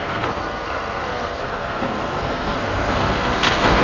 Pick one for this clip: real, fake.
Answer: fake